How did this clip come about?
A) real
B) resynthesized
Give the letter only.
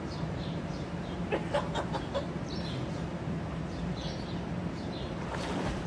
B